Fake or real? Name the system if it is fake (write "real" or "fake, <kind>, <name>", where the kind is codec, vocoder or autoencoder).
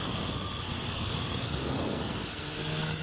fake, codec, SNAC